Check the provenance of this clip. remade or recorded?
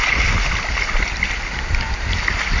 recorded